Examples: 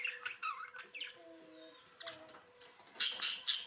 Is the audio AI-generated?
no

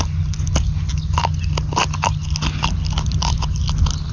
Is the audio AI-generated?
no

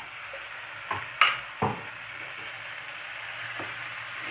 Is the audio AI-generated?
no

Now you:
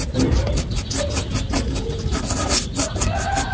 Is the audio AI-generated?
no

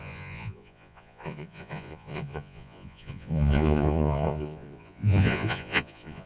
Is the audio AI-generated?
yes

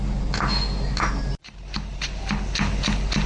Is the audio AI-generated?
no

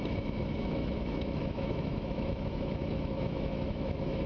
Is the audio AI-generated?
yes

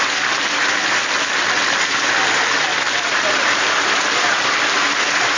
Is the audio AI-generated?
no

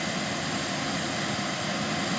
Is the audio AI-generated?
no